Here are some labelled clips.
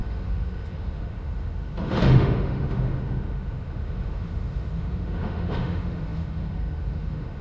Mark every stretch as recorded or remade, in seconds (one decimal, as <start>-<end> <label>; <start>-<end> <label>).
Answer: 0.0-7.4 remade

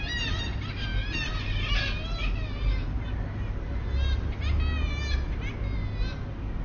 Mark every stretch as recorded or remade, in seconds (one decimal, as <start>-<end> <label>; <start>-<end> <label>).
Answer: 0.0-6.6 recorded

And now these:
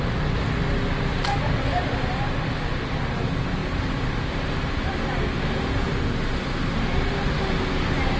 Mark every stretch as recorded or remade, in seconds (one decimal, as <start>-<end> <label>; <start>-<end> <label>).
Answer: 0.0-1.1 recorded; 1.1-1.9 remade; 1.9-3.6 recorded; 3.6-4.5 remade; 4.5-8.2 recorded

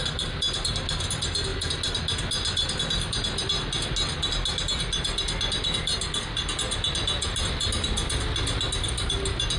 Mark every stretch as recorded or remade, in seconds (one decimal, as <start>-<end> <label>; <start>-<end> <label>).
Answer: 0.0-9.6 recorded